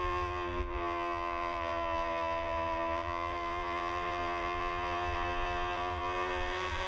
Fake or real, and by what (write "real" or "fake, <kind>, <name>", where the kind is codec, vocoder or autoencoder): fake, vocoder, BigVGAN v2